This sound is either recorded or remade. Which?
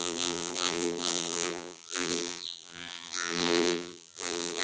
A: remade